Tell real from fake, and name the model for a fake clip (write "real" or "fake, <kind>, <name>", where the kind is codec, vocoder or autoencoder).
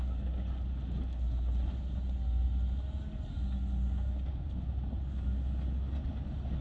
real